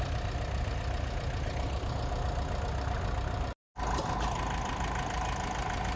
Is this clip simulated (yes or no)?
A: no